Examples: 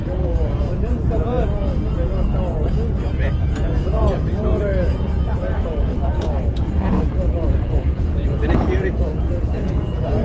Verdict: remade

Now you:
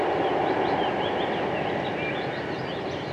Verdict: recorded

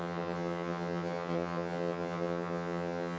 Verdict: remade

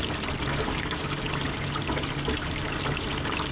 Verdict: recorded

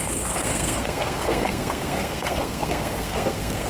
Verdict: remade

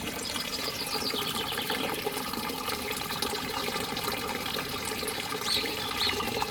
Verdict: remade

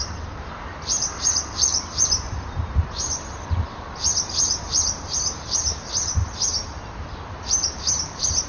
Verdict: remade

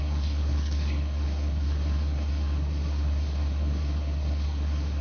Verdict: remade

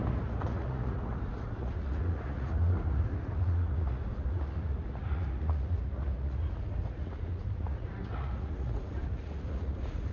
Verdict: remade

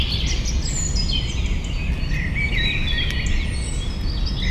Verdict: recorded